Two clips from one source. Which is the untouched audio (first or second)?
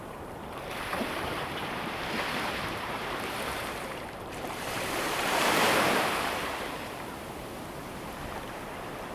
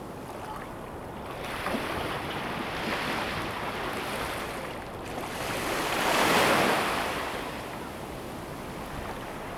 second